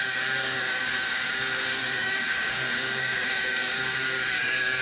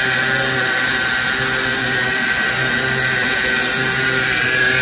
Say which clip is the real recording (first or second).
second